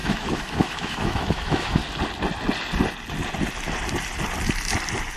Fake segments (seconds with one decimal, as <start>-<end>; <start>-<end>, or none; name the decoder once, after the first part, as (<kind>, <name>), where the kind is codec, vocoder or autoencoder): 0.0-1.8 (autoencoder, DAC-VAE)